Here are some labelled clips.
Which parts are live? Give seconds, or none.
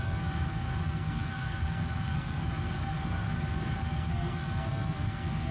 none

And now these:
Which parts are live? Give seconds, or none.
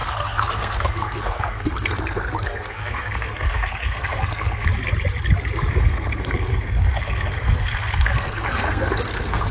4.7-5.7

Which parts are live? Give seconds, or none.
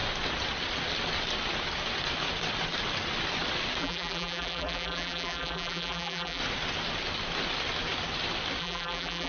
0.0-3.8; 6.4-8.6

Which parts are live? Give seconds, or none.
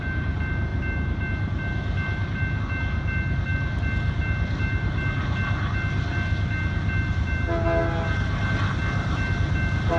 0.0-10.0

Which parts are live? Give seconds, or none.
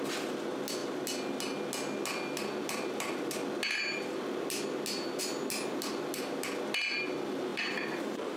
0.0-7.5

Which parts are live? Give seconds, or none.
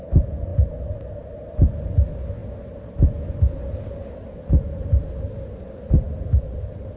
0.0-7.0